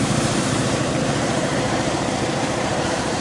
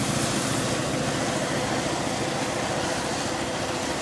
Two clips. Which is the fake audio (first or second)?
first